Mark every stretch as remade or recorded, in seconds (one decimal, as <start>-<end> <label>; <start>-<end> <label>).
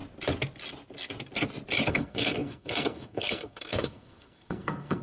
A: 0.0-1.9 recorded; 1.9-5.0 remade